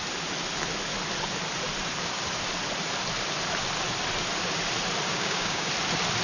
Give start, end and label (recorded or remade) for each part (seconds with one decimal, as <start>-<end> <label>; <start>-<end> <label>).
0.0-5.1 recorded; 5.1-5.7 remade; 5.7-6.2 recorded